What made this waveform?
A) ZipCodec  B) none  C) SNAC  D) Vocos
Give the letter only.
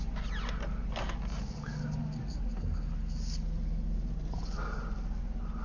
B